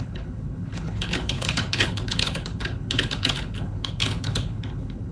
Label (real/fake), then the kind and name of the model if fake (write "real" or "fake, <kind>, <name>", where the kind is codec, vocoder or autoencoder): fake, codec, HILCodec